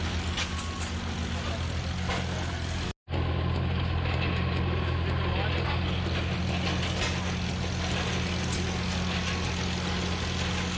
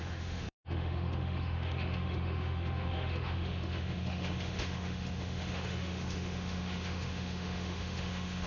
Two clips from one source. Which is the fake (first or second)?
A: second